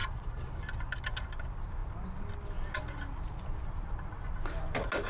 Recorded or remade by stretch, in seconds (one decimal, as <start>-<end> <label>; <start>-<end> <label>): 0.0-0.5 remade; 0.5-5.1 recorded